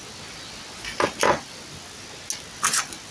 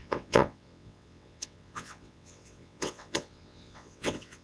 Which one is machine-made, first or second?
second